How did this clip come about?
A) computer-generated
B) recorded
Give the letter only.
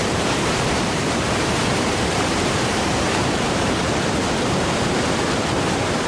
A